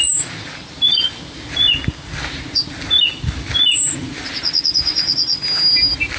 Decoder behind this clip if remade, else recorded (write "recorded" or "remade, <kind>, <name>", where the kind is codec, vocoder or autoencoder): recorded